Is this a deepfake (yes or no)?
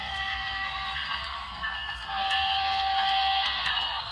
yes